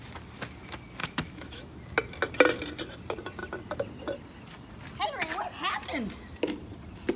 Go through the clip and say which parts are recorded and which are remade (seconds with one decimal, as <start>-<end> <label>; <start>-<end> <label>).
0.0-1.0 recorded; 1.0-1.8 remade; 1.8-7.2 recorded